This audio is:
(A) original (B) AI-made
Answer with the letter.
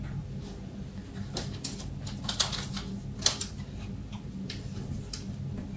A